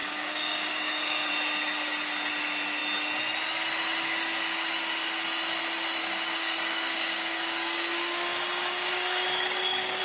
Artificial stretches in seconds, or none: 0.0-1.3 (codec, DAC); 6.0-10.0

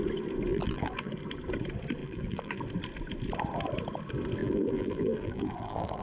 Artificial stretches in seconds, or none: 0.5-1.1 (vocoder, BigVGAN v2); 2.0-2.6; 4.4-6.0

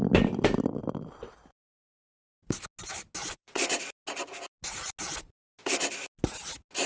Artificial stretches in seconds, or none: 3.2-3.8 (vocoder, Vocos)

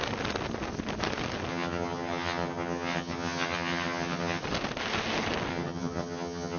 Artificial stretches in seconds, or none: 1.5-4.4 (vocoder, HiFi-GAN); 5.5-6.6

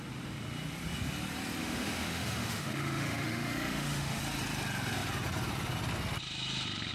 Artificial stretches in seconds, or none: 1.6-4.2 (autoencoder, DAC-VAE)